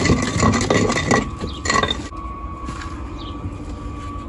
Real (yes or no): yes